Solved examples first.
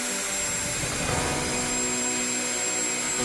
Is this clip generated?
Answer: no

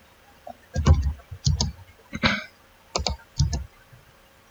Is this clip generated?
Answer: no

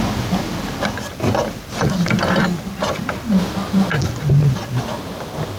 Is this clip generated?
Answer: no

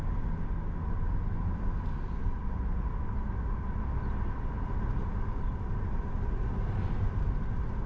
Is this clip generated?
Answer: no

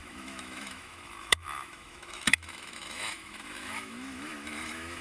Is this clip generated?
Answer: yes